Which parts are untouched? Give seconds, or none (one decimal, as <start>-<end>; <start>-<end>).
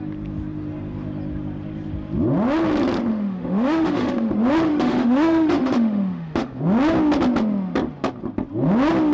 0.0-3.1; 4.3-4.7; 6.6-9.1